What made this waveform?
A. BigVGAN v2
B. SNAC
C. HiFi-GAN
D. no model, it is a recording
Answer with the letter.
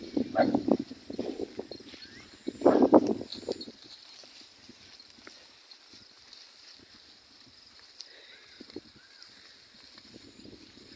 A